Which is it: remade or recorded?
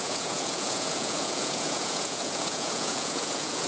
remade